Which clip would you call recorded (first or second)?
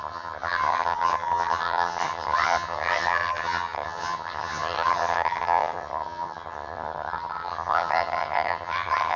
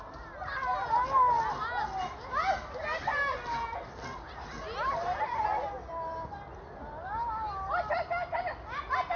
second